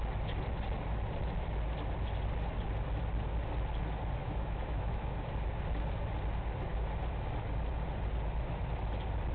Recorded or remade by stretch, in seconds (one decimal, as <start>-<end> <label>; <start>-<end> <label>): 0.0-4.2 recorded; 4.2-5.3 remade; 5.3-9.3 recorded